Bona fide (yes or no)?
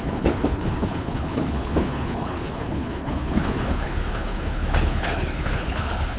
no